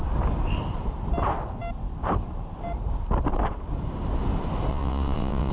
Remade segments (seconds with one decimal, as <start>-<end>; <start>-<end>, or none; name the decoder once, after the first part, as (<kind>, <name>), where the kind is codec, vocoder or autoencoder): 4.7-5.5 (vocoder, WaveNeXt)